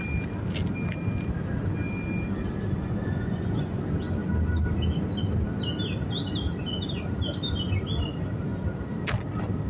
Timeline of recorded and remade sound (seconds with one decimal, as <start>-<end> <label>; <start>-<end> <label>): 0.0-2.8 recorded; 2.8-3.8 remade; 3.8-9.7 recorded